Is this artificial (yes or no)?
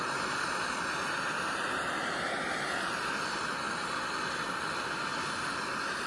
no